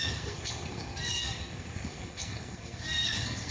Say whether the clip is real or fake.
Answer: fake